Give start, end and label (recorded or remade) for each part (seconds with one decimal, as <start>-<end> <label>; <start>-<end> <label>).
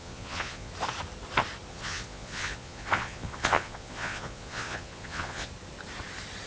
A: 0.0-0.7 remade; 0.7-1.7 recorded; 1.7-5.5 remade; 5.5-6.5 recorded